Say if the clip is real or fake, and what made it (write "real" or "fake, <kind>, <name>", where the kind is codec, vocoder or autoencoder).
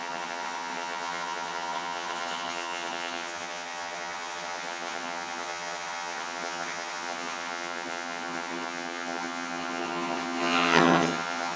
fake, vocoder, HiFi-GAN